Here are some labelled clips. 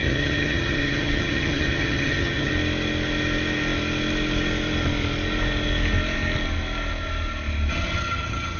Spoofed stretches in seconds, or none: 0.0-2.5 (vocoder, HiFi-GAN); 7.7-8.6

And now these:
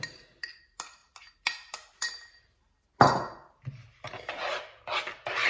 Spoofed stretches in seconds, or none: none

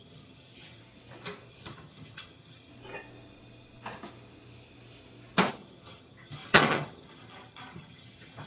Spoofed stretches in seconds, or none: 0.0-0.8 (vocoder, HiFi-GAN); 1.5-2.7; 5.5-8.5